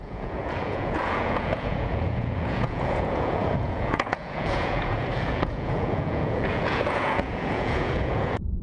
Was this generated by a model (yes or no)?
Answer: yes